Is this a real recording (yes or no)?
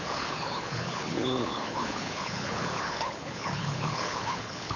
no